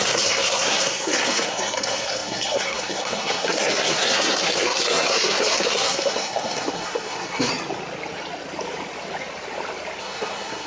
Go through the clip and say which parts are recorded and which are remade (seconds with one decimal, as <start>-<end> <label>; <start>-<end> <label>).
0.0-7.5 remade; 7.5-10.0 recorded; 10.0-10.7 remade